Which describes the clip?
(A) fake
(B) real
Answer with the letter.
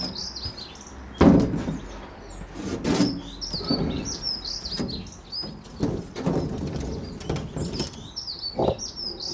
B